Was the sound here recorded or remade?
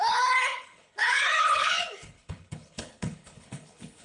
remade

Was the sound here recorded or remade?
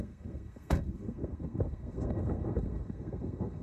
remade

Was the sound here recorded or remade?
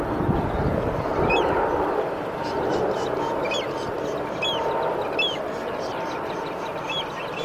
recorded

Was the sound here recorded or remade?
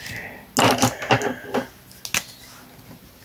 recorded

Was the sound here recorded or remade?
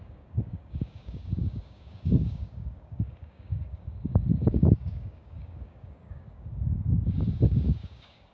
remade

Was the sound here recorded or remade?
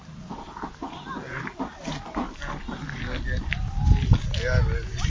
recorded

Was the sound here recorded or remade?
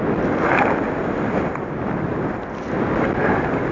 recorded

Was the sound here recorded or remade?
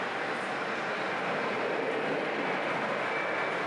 recorded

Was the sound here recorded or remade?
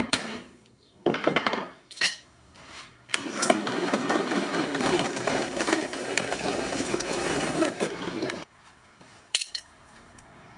remade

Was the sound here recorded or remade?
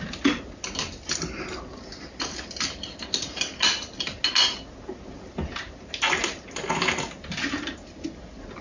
recorded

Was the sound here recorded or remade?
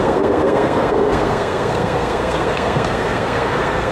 remade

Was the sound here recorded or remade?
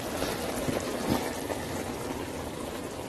recorded